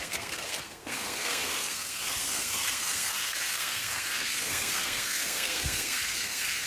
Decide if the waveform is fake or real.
fake